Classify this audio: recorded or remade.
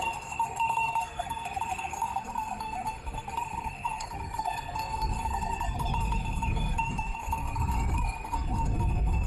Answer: remade